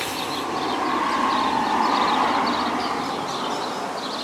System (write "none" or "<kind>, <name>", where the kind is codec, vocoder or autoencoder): none